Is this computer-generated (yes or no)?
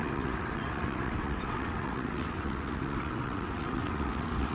yes